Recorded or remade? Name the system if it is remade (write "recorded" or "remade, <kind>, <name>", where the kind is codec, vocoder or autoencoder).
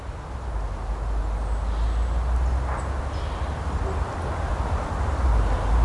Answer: recorded